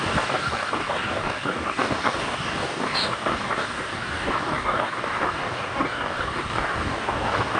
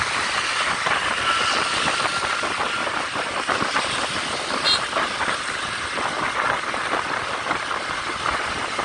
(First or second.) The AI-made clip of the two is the first